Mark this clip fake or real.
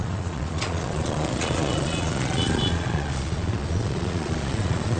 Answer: fake